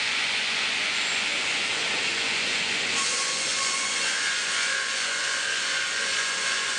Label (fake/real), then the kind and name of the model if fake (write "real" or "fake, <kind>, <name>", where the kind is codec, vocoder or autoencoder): fake, vocoder, Vocos